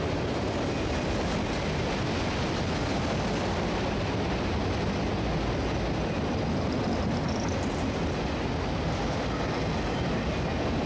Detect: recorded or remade recorded